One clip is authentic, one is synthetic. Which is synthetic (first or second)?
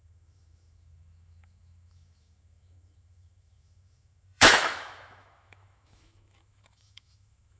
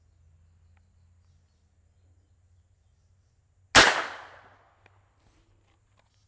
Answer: first